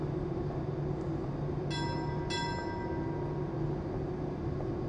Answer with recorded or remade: recorded